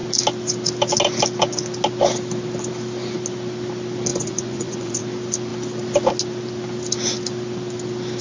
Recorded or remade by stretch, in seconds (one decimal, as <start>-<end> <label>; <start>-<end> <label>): 0.0-4.1 recorded; 4.1-5.0 remade; 5.0-8.2 recorded